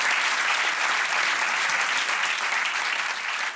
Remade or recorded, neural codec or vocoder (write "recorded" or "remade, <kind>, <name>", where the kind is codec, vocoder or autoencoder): recorded